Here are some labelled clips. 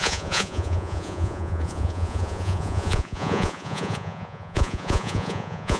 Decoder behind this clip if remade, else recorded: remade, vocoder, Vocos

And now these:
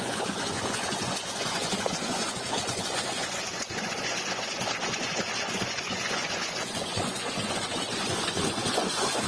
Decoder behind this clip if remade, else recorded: remade, vocoder, Vocos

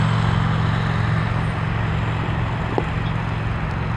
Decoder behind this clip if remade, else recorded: recorded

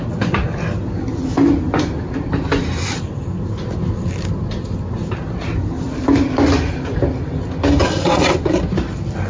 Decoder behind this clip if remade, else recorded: recorded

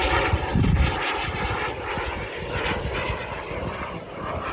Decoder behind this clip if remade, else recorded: recorded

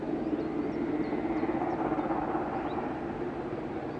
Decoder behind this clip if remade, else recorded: recorded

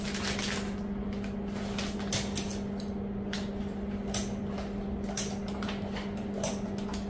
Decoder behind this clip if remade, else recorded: recorded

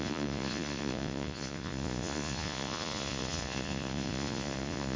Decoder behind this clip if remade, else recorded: remade, vocoder, Vocos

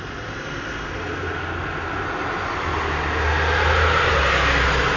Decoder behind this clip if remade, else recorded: recorded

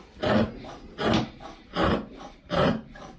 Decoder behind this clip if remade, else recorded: recorded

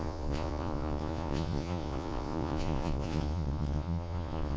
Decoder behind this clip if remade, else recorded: remade, vocoder, Vocos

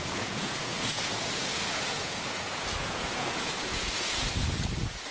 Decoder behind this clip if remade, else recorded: remade, vocoder, Vocos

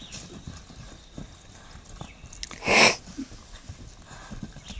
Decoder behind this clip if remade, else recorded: recorded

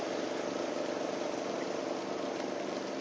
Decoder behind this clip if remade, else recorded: recorded